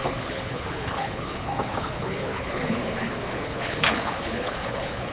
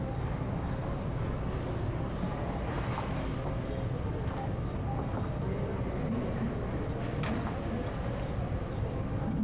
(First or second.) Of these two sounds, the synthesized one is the first